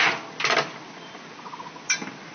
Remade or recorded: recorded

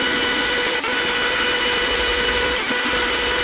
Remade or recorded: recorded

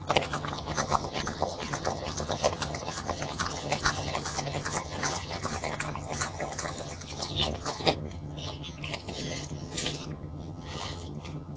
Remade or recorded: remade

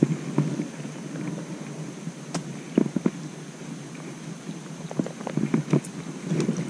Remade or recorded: recorded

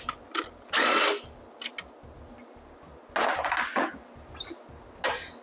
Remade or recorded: recorded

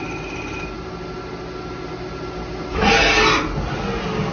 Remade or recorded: recorded